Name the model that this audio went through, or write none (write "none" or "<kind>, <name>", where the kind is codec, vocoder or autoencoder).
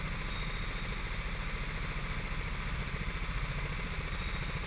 none